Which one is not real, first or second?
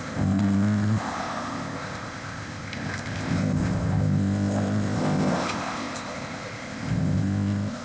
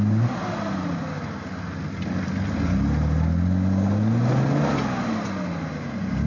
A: first